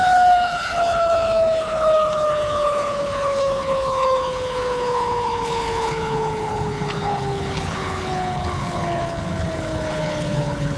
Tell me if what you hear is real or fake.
fake